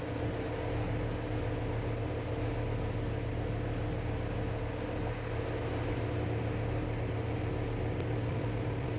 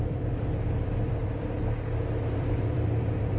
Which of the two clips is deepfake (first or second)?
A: second